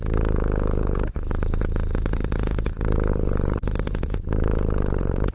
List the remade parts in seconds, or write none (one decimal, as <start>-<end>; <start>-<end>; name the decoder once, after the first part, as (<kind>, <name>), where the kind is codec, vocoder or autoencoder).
2.2-2.7 (vocoder, BigVGAN v2); 3.1-5.3